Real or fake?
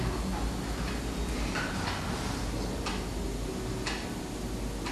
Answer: real